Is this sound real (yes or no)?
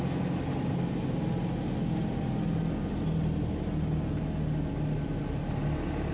yes